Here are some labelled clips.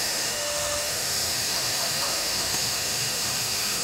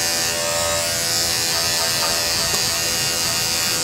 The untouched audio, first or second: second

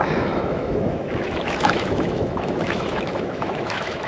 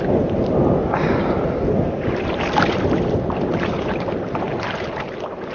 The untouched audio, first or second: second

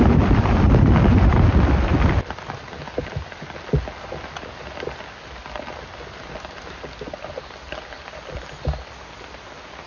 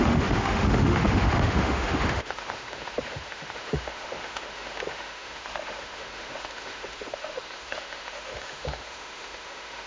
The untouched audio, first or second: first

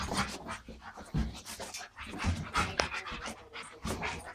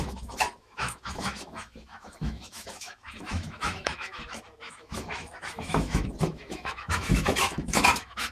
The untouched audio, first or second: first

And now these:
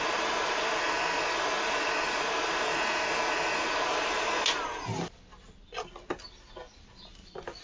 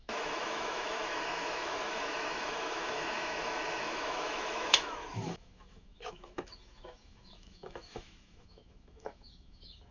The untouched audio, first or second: first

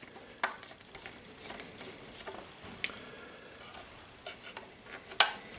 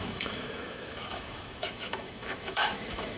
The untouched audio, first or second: first